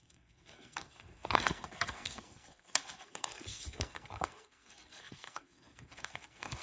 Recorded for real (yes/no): no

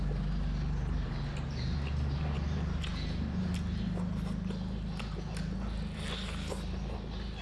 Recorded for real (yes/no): yes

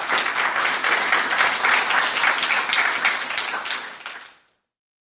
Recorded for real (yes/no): yes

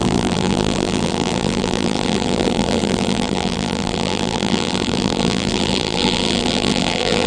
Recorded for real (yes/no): no